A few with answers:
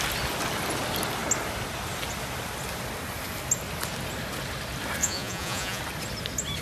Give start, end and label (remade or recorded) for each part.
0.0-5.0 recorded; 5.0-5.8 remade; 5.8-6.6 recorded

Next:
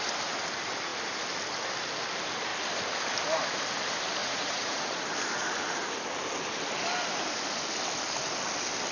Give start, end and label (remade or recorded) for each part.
0.0-4.2 recorded; 4.2-5.0 remade; 5.0-8.9 recorded